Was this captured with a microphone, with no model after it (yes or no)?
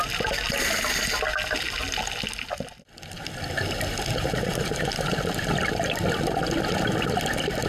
yes